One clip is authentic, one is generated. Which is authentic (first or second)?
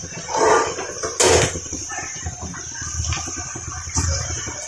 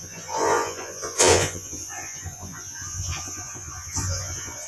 first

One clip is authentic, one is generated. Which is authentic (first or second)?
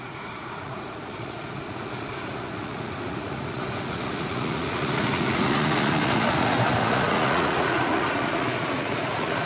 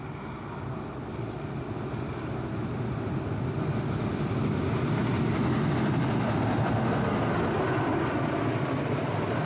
second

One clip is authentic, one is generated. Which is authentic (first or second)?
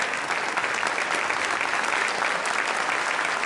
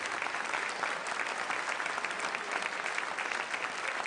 first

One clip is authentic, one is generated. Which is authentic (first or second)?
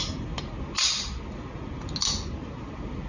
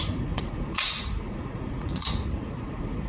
first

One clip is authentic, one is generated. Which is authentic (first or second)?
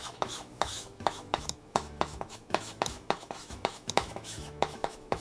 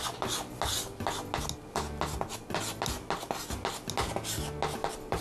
second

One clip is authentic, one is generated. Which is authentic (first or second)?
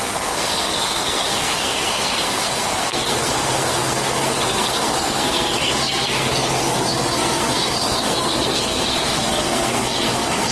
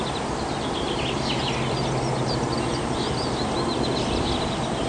second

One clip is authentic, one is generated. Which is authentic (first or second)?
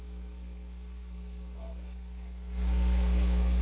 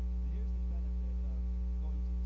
second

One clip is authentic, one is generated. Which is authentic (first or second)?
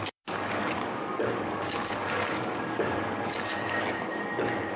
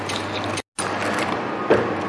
second